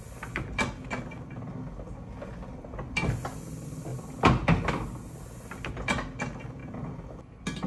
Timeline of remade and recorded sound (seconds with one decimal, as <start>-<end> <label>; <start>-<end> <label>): 0.0-7.7 recorded